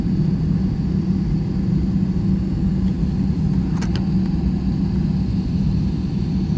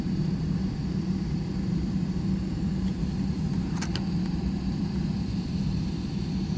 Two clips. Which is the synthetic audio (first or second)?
second